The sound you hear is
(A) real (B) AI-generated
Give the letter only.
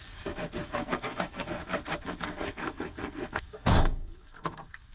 B